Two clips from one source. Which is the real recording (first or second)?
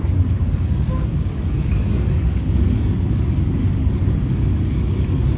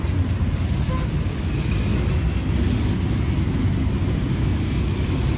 second